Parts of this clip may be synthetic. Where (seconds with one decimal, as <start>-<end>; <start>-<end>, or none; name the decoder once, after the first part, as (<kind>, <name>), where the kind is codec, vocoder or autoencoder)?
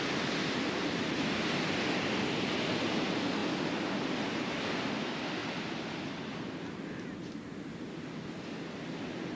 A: none